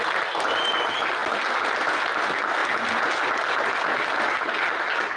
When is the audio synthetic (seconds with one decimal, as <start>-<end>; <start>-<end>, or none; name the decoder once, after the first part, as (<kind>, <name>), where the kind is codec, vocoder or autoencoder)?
none